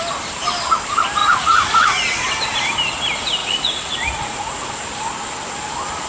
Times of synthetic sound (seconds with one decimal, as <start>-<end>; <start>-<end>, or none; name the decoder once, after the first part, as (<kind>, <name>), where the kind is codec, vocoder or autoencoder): 1.2-2.2 (vocoder, Vocos); 3.4-4.7